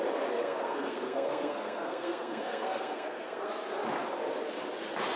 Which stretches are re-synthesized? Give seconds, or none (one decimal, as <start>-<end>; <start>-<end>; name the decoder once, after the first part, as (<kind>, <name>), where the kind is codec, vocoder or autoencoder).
0.4-3.5 (codec, SNAC)